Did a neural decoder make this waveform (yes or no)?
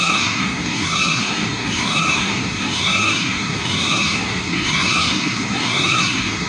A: yes